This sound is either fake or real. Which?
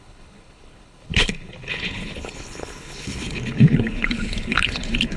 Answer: fake